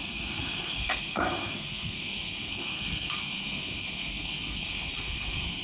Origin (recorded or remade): remade